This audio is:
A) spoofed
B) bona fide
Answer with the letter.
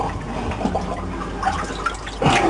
B